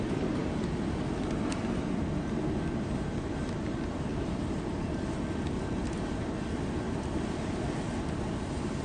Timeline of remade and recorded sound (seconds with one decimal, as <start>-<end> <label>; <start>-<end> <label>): 0.0-0.4 recorded; 0.4-1.0 remade; 1.0-4.1 recorded; 4.1-5.4 remade; 5.4-8.8 recorded